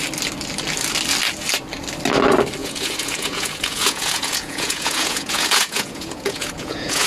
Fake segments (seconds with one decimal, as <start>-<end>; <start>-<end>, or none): 2.6-7.1